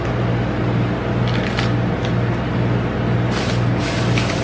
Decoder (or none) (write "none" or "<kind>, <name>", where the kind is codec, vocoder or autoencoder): none